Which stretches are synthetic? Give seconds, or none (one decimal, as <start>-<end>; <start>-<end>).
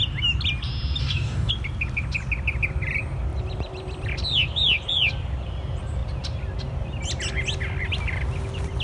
1.0-1.5